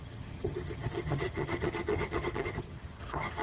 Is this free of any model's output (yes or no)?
no